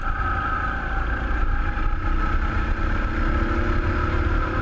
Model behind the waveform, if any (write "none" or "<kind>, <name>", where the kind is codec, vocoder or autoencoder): none